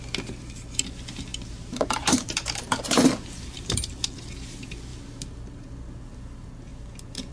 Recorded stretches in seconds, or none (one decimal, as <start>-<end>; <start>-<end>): 0.0-1.3; 3.9-7.3